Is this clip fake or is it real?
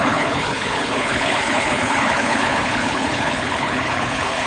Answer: fake